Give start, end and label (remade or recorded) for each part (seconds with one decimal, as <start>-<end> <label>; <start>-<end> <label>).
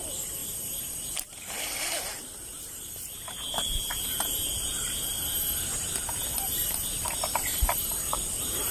0.0-5.1 remade; 5.1-7.9 recorded; 7.9-8.7 remade